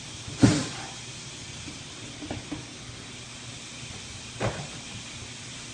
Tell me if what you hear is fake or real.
real